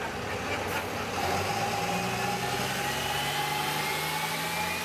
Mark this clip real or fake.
real